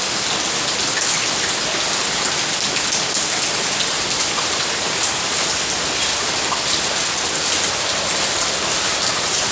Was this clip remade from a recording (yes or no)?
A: no